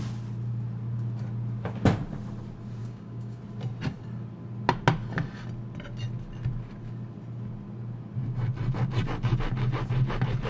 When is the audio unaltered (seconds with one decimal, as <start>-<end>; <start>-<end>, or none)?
0.0-2.8; 3.4-10.5